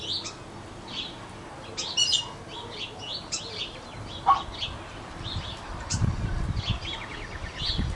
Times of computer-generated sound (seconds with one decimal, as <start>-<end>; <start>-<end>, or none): none